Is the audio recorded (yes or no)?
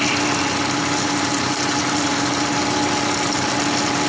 yes